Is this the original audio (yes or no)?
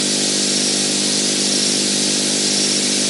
yes